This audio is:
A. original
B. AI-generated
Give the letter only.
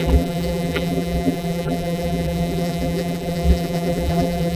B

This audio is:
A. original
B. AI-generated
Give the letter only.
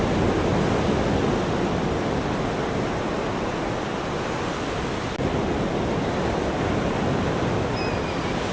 A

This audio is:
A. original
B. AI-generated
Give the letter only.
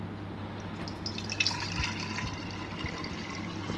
A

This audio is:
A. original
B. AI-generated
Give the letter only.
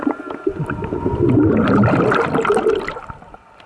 A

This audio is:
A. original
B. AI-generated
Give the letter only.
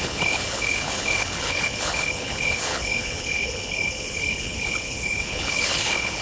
B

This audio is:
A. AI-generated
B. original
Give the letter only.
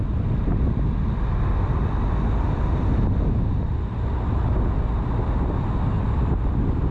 B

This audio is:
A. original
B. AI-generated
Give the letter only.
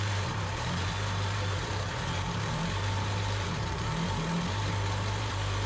B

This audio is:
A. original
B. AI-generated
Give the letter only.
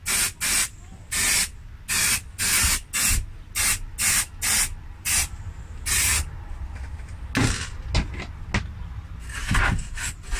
A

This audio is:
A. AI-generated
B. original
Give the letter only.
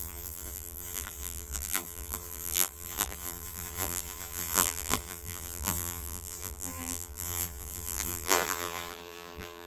A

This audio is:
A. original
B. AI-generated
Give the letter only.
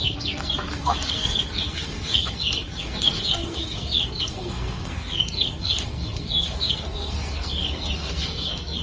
B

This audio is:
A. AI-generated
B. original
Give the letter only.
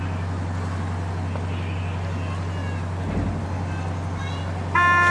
B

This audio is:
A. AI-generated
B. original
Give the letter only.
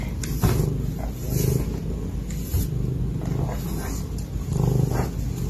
B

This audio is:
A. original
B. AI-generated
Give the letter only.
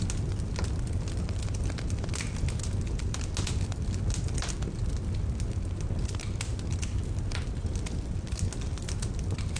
A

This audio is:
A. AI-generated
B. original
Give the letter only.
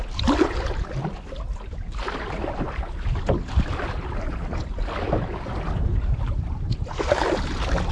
B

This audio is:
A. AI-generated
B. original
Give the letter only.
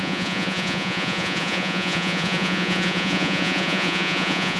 A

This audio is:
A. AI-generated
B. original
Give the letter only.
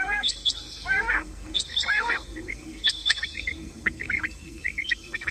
A